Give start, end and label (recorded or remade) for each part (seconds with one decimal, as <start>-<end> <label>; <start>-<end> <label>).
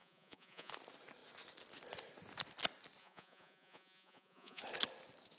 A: 0.0-0.7 remade; 0.7-3.0 recorded; 3.0-4.6 remade; 4.6-5.4 recorded